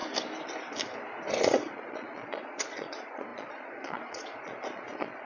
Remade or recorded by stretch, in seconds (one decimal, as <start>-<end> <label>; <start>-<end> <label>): 0.0-1.4 recorded; 1.4-5.3 remade